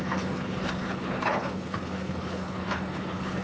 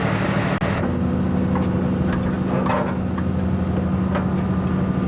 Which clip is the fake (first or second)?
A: first